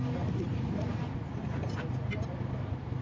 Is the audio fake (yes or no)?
no